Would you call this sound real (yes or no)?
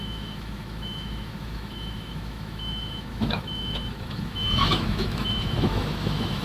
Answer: no